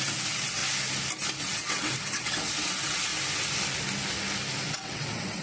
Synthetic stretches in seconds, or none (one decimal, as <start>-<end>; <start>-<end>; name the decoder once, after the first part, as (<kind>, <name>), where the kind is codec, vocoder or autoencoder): 0.0-0.6 (vocoder, WaveNeXt); 1.4-3.1; 4.7-5.4